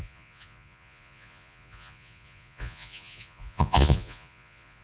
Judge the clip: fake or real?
fake